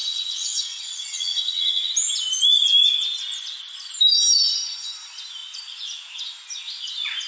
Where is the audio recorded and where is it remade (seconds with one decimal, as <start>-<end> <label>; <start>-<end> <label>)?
0.0-1.9 remade; 1.9-7.3 recorded